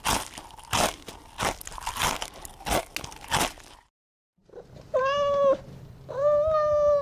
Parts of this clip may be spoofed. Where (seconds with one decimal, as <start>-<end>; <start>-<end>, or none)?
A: none